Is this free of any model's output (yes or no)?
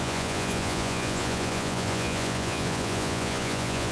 no